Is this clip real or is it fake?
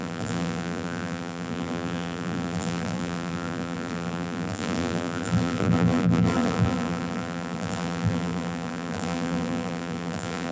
fake